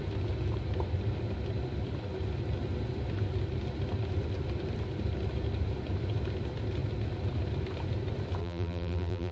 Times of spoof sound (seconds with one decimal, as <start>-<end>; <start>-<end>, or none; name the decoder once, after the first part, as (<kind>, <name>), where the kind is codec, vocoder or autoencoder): 8.4-9.3 (vocoder, BigVGAN v2)